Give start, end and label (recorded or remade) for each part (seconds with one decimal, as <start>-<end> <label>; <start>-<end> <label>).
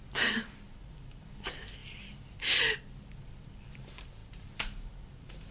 0.0-5.5 recorded